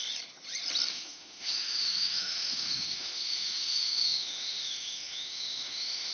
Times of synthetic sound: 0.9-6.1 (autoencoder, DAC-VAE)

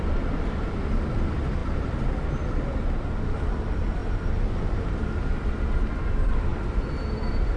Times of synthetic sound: none

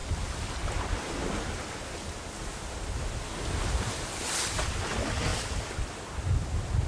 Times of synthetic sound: none